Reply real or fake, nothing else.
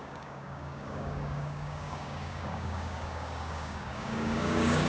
fake